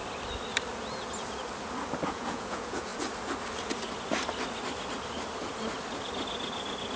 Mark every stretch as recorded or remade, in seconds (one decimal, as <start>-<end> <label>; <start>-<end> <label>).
0.0-2.1 recorded; 2.1-2.9 remade; 2.9-7.0 recorded